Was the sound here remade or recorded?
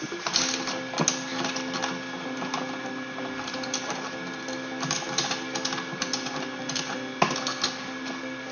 recorded